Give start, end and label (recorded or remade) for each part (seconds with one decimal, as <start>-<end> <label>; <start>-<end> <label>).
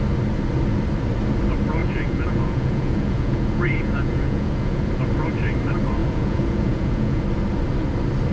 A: 0.0-1.8 recorded; 1.8-4.8 remade; 4.8-6.0 recorded; 6.0-7.2 remade; 7.2-8.3 recorded